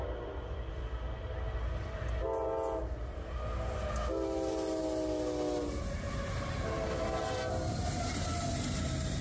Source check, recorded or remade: recorded